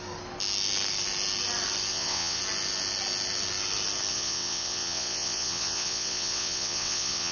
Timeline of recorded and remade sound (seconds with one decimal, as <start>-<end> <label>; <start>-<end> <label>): 0.0-1.9 recorded; 1.9-2.4 remade; 2.4-4.1 recorded; 4.1-7.3 remade